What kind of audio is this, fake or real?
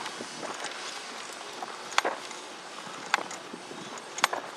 real